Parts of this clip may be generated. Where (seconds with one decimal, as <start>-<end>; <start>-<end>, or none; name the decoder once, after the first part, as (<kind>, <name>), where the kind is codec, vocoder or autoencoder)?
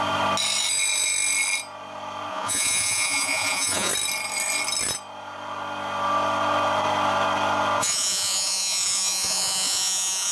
2.3-3.9 (vocoder, Vocos); 7.8-10.3